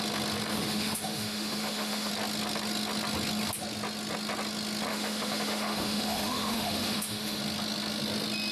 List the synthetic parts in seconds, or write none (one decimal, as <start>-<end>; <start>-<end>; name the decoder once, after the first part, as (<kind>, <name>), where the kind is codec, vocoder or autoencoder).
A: 0.5-2.1 (autoencoder, DAC-VAE); 4.9-7.4